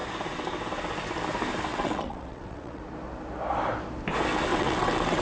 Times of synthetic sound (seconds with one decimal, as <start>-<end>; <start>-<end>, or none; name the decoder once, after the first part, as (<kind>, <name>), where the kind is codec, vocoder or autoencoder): 1.7-2.8 (vocoder, WaveNeXt); 4.5-5.2